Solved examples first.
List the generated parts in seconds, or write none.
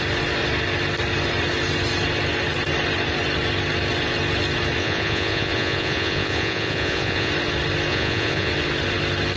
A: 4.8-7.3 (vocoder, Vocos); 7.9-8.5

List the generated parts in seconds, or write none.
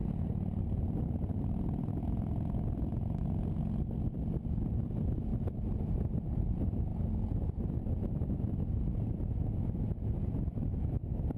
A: none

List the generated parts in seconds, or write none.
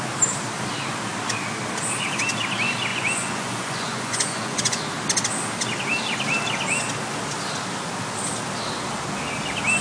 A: 2.9-4.8 (vocoder, Vocos)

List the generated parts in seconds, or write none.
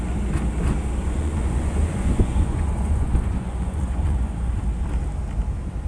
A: 1.0-4.5 (vocoder, Vocos)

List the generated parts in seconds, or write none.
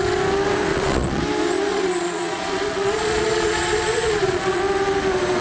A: 0.7-1.2 (vocoder, Vocos); 1.7-4.6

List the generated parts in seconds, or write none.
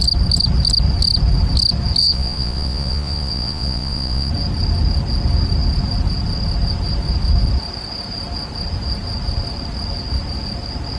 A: 2.0-4.3 (vocoder, Vocos)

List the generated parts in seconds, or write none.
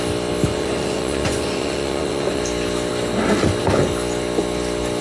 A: 0.5-2.4 (vocoder, Vocos)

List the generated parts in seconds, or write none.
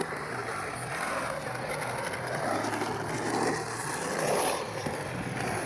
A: none